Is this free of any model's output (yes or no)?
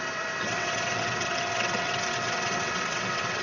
no